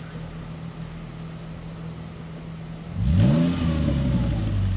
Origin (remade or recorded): recorded